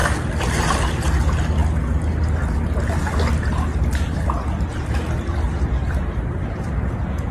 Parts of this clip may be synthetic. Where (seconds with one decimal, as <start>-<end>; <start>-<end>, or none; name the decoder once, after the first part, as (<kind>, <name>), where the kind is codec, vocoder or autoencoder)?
none